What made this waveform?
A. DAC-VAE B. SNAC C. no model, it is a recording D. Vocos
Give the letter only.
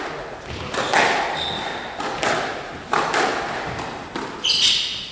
C